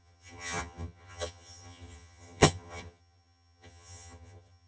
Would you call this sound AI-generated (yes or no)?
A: yes